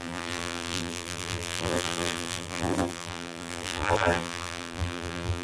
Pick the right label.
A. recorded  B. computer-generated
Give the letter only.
B